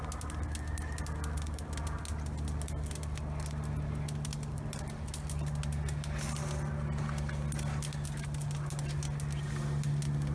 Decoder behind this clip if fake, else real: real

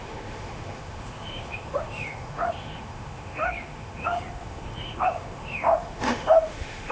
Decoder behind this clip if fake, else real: fake, autoencoder, DAC-VAE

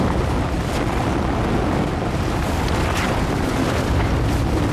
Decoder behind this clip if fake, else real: real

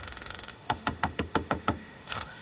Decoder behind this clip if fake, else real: fake, autoencoder, DAC-VAE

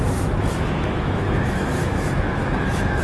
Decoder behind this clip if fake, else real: fake, autoencoder, DAC-VAE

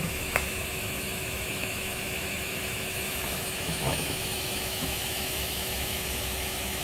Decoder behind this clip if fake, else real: fake, autoencoder, DAC-VAE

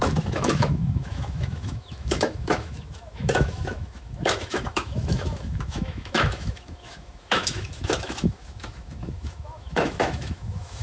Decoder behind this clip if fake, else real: fake, autoencoder, DAC-VAE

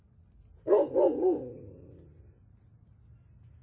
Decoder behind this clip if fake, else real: real